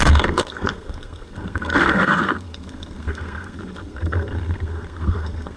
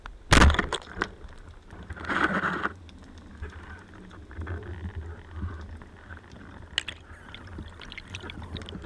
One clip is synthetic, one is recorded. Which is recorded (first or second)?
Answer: second